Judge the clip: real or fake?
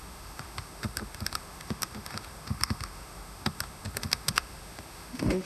fake